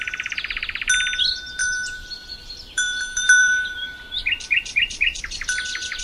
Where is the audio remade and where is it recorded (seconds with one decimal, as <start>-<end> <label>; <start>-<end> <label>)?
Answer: 0.0-1.6 recorded; 1.6-5.2 remade; 5.2-6.0 recorded